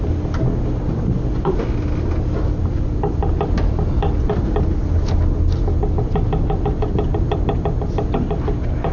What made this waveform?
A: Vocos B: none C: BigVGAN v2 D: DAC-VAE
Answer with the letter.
B